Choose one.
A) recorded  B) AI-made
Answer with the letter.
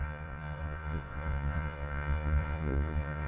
B